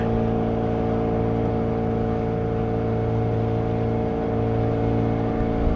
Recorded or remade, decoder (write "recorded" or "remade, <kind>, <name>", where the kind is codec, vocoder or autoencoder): recorded